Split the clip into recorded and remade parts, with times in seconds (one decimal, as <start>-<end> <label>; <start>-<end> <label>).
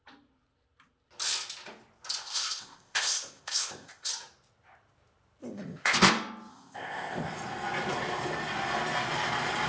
0.0-2.2 recorded; 2.2-4.1 remade; 4.1-5.4 recorded; 5.4-6.1 remade; 6.1-6.5 recorded; 6.5-7.3 remade; 7.3-9.7 recorded